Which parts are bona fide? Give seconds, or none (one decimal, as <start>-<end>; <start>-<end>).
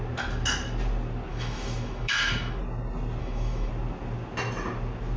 0.0-1.3; 2.6-3.2; 3.7-5.2